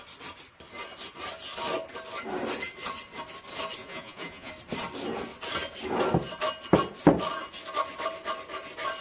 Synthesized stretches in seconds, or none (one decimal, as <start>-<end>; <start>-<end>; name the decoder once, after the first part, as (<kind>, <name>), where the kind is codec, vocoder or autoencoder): 3.8-4.5 (vocoder, Vocos)